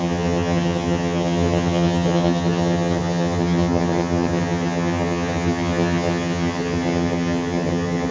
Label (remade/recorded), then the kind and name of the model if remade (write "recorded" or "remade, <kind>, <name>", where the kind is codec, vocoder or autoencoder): remade, vocoder, HiFi-GAN